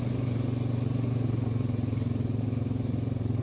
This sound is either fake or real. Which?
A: real